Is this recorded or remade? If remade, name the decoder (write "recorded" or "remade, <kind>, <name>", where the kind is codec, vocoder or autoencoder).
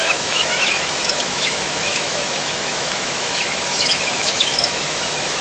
remade, autoencoder, DAC-VAE